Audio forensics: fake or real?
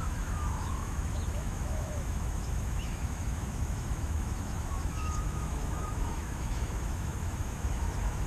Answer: fake